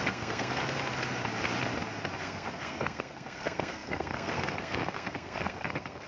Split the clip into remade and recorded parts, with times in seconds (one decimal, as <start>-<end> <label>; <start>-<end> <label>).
0.0-0.6 remade; 0.6-2.2 recorded; 2.2-6.1 remade